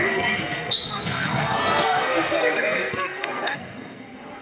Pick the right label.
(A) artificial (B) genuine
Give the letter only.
A